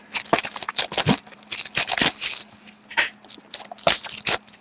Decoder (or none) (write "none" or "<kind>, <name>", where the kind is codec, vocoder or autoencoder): none